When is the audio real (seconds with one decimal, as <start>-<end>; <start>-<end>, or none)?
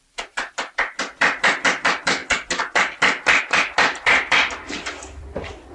2.2-3.4